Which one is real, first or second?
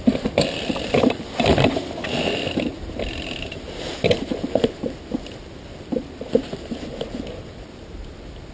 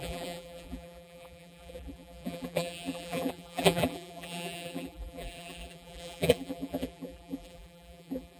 first